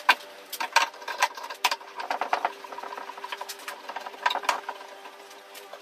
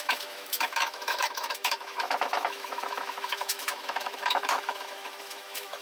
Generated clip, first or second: second